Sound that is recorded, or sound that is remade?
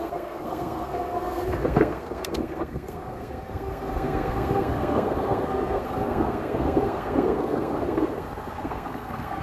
remade